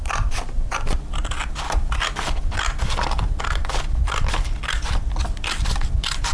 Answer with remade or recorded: remade